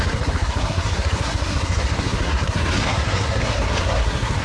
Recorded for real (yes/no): no